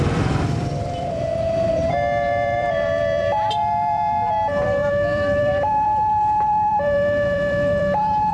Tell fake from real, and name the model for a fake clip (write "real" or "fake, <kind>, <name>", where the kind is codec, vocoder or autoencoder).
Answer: fake, vocoder, BigVGAN v2